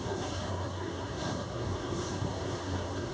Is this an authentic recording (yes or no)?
no